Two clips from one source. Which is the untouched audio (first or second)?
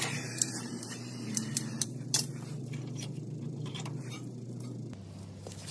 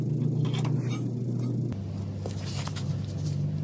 second